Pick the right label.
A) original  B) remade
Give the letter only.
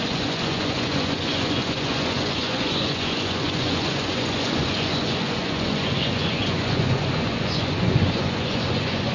B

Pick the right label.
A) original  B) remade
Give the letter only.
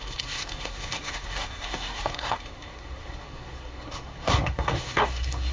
B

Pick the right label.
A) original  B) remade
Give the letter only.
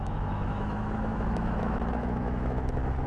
B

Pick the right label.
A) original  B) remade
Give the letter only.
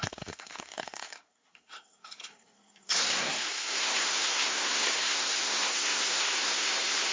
B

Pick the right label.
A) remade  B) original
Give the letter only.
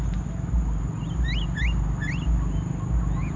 B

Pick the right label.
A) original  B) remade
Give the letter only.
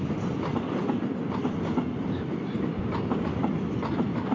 A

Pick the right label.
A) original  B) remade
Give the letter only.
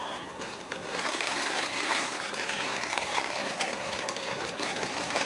B